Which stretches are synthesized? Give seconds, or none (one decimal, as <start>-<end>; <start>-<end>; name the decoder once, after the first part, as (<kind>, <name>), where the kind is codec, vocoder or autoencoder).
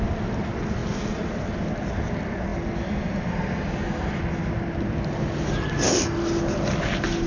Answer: none